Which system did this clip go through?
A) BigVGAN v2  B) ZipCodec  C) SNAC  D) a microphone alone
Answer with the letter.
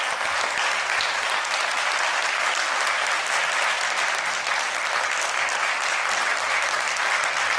D